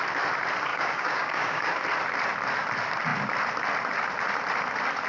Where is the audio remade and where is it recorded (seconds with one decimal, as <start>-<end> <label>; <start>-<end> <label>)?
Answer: 0.0-0.7 recorded; 0.7-1.7 remade; 1.7-5.1 recorded